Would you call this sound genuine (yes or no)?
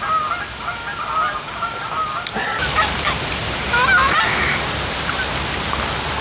yes